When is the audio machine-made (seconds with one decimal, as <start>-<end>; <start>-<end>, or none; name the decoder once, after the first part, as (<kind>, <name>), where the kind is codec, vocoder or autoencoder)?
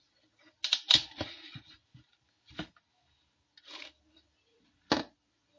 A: none